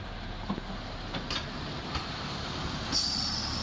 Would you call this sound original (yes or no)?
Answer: yes